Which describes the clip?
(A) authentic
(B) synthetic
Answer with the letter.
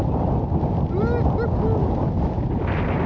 A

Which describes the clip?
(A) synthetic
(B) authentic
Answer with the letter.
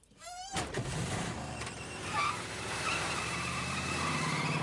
A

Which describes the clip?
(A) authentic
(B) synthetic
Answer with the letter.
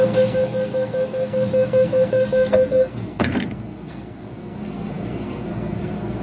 B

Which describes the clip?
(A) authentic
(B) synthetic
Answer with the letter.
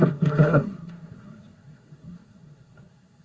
B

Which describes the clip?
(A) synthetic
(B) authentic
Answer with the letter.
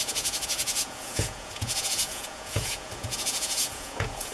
A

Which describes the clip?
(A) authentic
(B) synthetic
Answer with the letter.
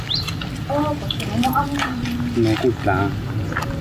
A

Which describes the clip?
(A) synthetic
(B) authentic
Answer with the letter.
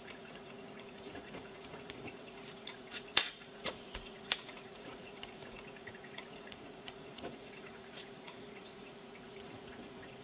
A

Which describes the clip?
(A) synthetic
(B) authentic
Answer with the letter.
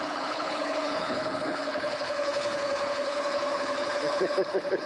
A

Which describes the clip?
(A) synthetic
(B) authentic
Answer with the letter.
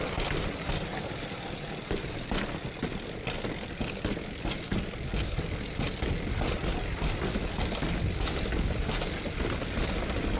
B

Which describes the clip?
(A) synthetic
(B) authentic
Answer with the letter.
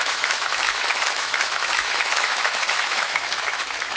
A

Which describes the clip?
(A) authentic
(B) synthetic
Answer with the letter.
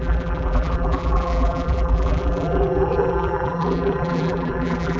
B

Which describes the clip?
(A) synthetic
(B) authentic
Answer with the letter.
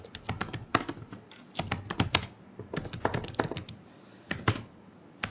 B